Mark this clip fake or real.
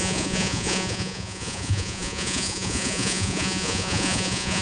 fake